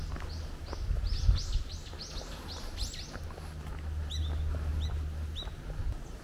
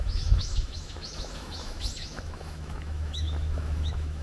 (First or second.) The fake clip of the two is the second